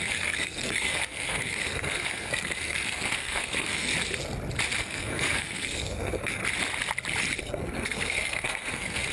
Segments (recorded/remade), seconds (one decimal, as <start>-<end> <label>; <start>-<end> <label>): 0.0-3.9 remade; 3.9-4.8 recorded; 4.8-6.4 remade; 6.4-7.4 recorded; 7.4-9.1 remade